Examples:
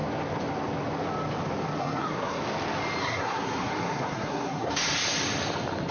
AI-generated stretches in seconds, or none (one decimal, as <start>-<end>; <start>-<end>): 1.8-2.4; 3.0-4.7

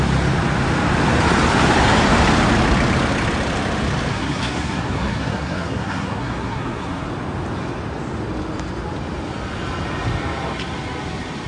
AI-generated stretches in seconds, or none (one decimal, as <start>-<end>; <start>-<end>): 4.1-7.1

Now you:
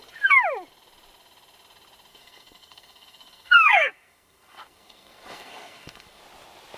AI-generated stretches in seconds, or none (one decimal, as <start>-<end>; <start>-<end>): 2.1-6.2

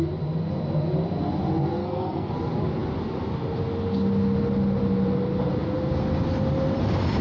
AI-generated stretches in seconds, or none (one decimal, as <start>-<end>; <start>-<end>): 1.8-2.3

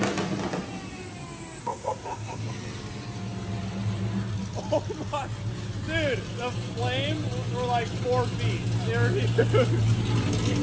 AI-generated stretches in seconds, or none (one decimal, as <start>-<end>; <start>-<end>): 1.6-2.5

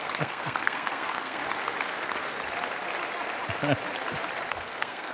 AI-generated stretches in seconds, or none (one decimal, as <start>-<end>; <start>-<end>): 0.0-1.4; 4.5-5.1

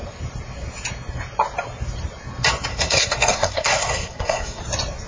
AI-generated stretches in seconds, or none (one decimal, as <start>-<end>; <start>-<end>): 2.7-4.6

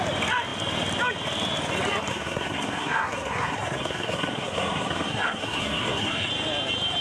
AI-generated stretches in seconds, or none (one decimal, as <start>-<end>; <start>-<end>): 2.1-6.3